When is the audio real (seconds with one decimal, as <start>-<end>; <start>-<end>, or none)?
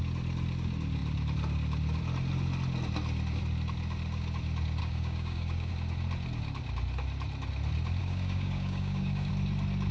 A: 0.0-4.8; 5.7-8.0; 9.3-9.9